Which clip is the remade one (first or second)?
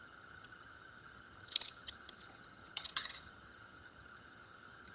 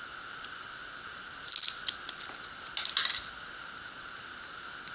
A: first